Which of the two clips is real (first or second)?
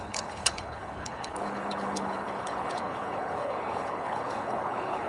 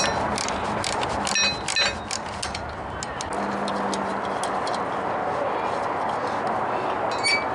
second